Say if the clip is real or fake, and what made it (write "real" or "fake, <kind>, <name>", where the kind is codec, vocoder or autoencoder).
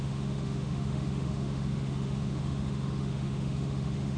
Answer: fake, autoencoder, DAC-VAE